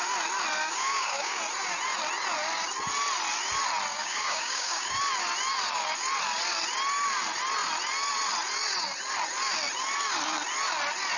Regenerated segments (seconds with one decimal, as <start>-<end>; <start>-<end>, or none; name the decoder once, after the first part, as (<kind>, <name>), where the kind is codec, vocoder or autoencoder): 0.6-1.4 (codec, DAC); 3.9-5.0